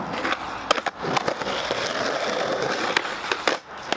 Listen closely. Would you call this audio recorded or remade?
recorded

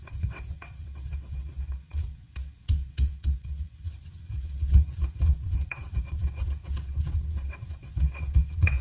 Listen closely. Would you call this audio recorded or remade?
remade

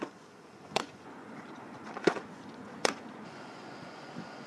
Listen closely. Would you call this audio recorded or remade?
remade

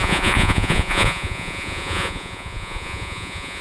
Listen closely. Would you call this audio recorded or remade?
remade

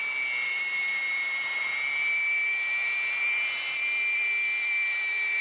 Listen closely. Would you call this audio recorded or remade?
recorded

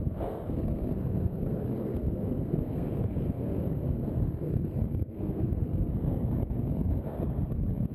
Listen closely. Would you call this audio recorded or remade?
remade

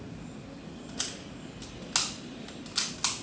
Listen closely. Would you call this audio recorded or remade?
recorded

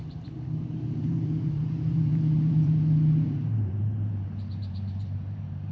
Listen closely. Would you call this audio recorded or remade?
remade